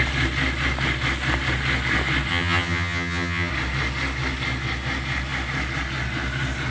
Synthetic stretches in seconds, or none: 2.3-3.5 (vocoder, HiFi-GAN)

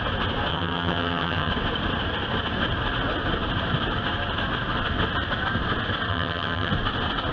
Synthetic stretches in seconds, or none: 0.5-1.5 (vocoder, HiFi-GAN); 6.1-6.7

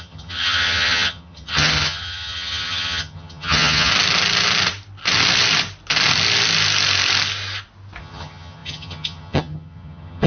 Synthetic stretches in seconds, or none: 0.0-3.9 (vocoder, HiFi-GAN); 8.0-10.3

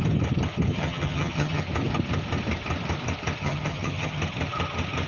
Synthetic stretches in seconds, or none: 0.7-1.6 (vocoder, HiFi-GAN); 3.4-4.2